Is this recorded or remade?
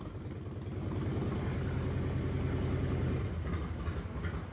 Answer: recorded